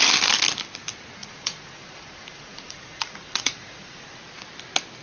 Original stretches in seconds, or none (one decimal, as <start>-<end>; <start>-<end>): 0.0-1.2; 4.2-5.0